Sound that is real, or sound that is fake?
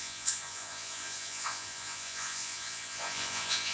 fake